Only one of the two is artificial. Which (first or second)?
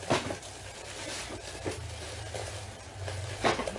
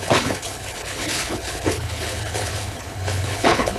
second